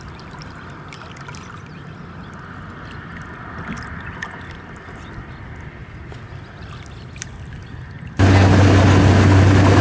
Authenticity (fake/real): real